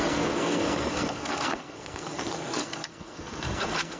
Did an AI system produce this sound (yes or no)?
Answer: yes